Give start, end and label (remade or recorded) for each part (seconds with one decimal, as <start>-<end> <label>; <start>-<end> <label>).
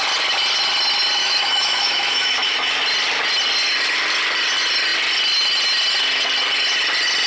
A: 0.0-1.2 recorded; 1.2-2.8 remade; 2.8-7.3 recorded